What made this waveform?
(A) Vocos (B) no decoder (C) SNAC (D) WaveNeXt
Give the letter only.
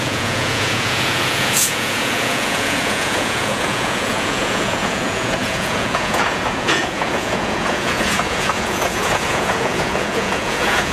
A